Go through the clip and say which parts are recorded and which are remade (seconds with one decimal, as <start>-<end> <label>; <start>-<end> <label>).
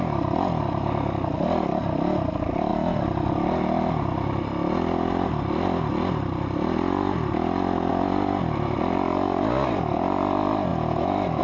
0.0-11.4 recorded